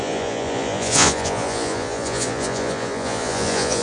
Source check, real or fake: fake